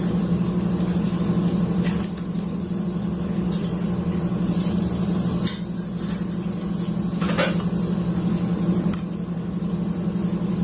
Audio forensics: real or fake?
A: real